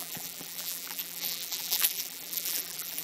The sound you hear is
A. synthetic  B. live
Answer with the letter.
A